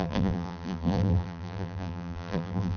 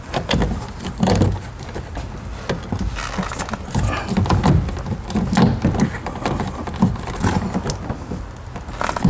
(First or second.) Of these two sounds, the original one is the second